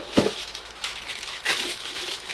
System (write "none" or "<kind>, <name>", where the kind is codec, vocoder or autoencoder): autoencoder, DAC-VAE